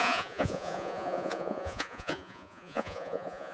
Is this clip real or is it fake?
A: fake